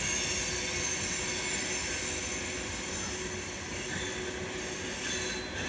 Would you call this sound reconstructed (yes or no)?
no